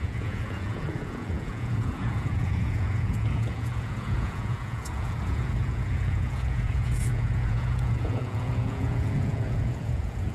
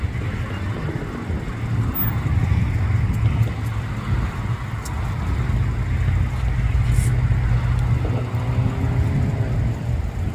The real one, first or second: second